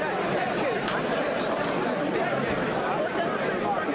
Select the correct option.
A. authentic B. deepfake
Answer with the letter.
A